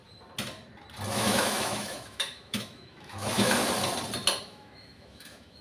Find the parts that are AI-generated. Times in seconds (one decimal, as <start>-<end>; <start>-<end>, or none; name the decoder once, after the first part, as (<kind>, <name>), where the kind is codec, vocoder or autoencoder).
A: 1.1-3.6 (autoencoder, DAC-VAE); 4.4-5.6